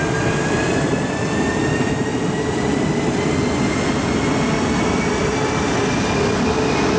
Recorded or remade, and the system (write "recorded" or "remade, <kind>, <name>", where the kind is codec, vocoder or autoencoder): recorded